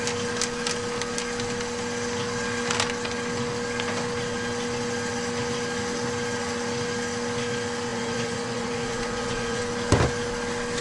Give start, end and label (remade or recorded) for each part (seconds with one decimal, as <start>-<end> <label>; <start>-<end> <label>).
0.0-7.9 recorded; 7.9-9.6 remade; 9.6-10.8 recorded